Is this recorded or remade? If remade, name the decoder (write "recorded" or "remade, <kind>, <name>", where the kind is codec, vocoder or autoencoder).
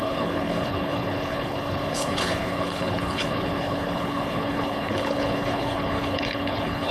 remade, codec, HILCodec